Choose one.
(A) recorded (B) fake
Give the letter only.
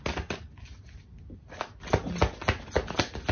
A